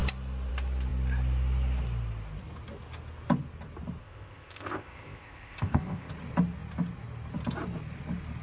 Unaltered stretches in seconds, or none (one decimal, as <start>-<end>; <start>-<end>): 0.0-4.0; 6.1-8.4